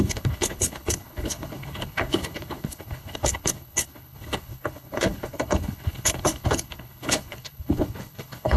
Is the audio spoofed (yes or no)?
yes